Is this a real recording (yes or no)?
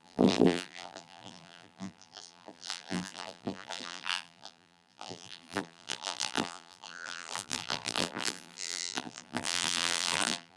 no